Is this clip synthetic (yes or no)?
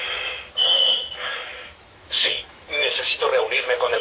yes